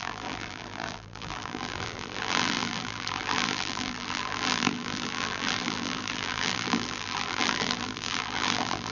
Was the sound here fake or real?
fake